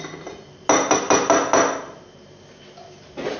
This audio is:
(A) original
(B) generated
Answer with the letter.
A